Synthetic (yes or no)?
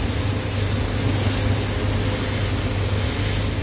no